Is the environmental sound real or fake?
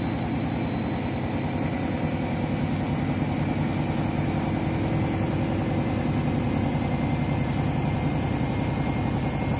real